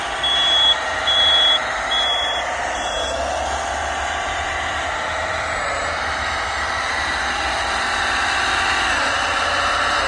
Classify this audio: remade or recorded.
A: remade